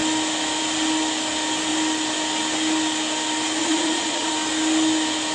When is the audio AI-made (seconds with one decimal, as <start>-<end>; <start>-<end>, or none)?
3.6-4.3